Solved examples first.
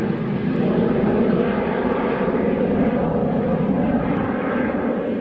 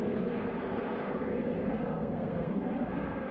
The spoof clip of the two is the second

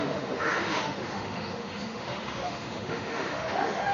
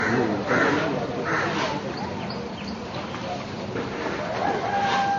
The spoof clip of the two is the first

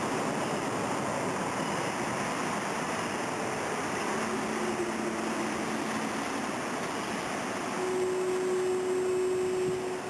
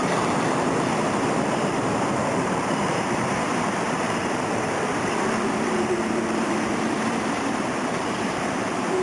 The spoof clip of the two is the second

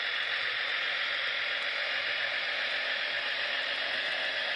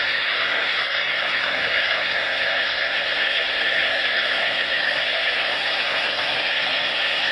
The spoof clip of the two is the second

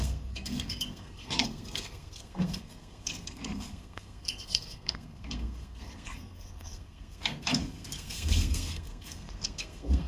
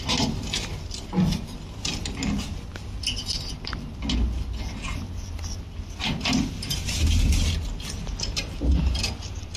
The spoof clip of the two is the first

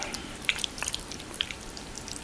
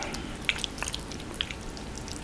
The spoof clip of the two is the first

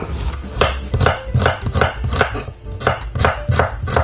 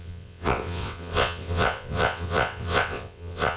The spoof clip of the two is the second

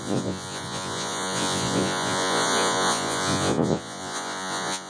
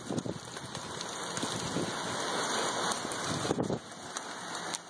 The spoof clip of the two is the first